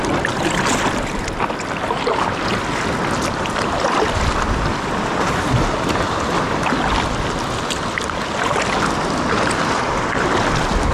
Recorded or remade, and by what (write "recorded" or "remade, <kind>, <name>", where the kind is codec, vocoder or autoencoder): recorded